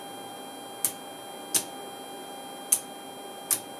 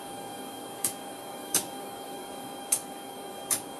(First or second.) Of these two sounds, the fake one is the second